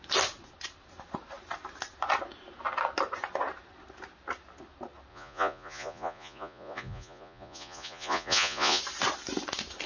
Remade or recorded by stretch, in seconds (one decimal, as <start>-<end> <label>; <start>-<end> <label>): 0.0-5.1 recorded; 5.1-8.8 remade; 8.8-9.9 recorded